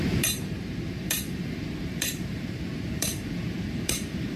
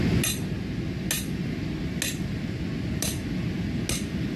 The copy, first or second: first